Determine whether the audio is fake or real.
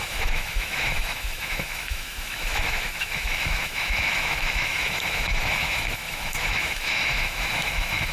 fake